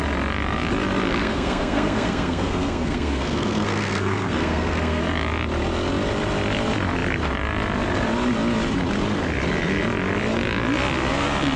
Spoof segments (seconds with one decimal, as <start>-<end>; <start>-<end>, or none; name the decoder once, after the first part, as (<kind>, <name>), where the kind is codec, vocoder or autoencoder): 1.2-5.0 (codec, SNAC)